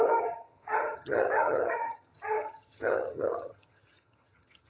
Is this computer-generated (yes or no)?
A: yes